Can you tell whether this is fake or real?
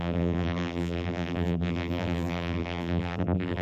fake